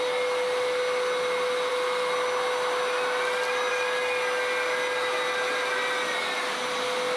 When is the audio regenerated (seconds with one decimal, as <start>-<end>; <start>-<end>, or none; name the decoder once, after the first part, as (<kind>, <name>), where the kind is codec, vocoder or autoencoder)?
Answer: none